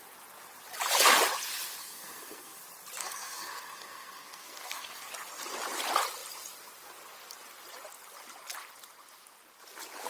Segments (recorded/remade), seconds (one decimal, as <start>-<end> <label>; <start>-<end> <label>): 0.0-1.8 recorded; 1.8-2.6 remade; 2.6-3.0 recorded; 3.0-5.1 remade; 5.1-10.1 recorded